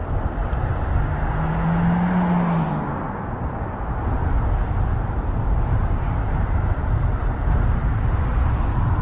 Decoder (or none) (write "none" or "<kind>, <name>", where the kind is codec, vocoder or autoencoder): none